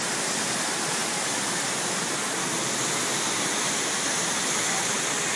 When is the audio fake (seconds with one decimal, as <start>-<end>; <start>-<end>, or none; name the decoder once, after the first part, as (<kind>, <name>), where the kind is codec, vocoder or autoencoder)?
none